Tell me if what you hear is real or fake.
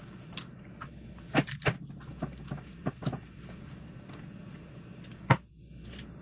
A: real